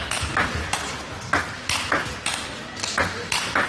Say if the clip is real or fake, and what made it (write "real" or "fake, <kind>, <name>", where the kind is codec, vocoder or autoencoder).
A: real